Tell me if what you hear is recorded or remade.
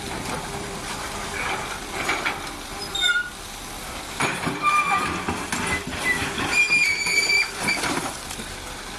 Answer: remade